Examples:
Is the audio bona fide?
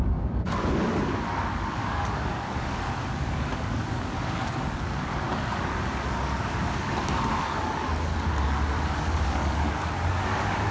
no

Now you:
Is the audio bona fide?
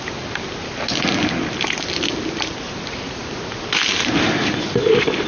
yes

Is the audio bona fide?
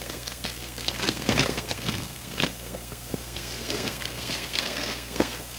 no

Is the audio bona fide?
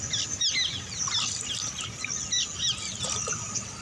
yes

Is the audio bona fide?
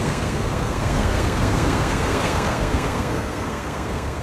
no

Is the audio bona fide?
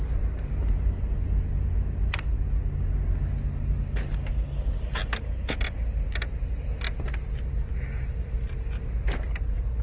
yes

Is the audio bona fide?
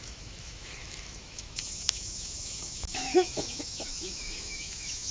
no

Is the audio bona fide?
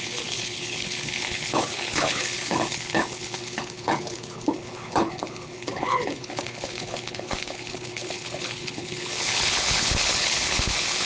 no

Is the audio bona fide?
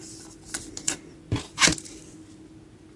yes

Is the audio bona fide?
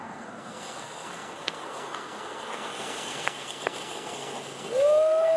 no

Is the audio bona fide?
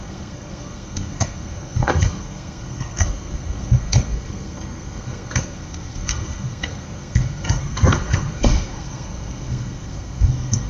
no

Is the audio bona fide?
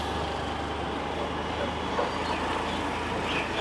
yes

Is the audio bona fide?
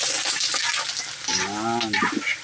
yes